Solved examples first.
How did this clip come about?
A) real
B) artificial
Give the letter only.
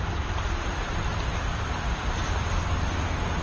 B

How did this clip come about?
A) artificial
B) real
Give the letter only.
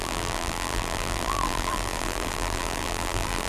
A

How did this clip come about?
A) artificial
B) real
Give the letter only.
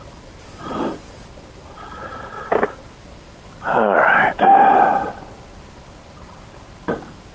B